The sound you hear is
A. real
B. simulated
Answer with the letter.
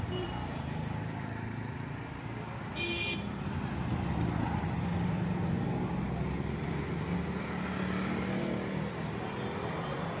A